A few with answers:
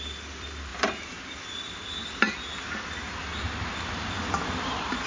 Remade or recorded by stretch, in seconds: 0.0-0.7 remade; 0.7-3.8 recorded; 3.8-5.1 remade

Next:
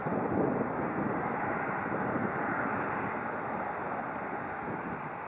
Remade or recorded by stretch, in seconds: 0.0-5.3 recorded

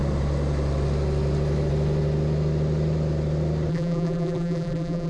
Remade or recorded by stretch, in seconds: 0.0-3.7 recorded; 3.7-5.1 remade

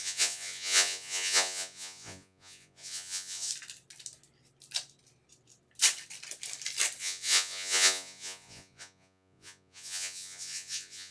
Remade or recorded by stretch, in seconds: 0.0-3.5 remade; 3.5-7.0 recorded; 7.0-11.1 remade

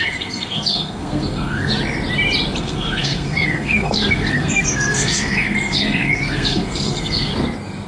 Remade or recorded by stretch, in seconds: 0.0-1.7 remade; 1.7-2.6 recorded; 2.6-7.3 remade; 7.3-7.9 recorded

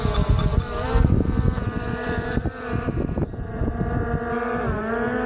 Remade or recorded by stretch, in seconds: 0.0-0.5 recorded; 0.5-3.7 remade; 3.7-5.3 recorded

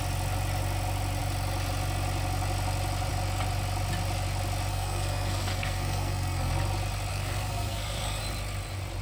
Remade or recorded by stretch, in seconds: 0.0-4.7 recorded; 4.7-6.5 remade; 6.5-7.1 recorded; 7.1-8.2 remade; 8.2-9.0 recorded